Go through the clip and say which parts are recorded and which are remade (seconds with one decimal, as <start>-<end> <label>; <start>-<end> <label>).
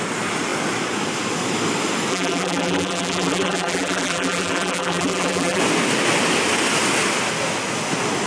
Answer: 0.0-2.1 recorded; 2.1-5.6 remade; 5.6-8.3 recorded